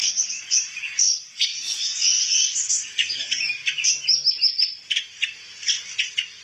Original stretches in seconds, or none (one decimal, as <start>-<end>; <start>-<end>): 3.5-6.4